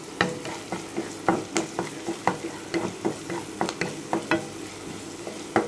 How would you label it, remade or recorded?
recorded